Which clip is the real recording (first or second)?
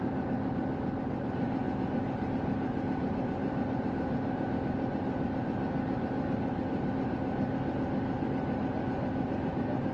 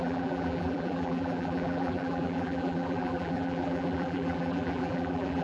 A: first